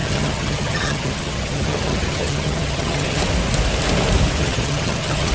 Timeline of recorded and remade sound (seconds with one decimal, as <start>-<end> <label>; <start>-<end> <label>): 0.0-3.2 remade; 3.2-4.4 recorded; 4.4-5.3 remade